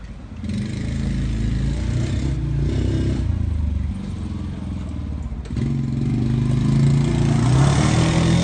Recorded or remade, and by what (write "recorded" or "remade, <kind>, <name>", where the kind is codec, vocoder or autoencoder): recorded